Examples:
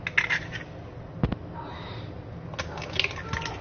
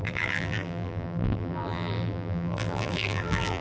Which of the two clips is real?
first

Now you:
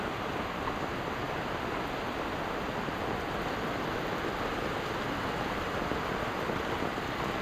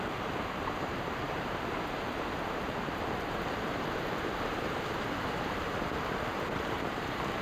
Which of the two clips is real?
first